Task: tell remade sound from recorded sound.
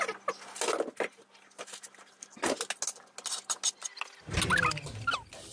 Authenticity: recorded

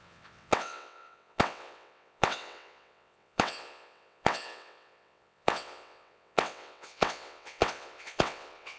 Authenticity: remade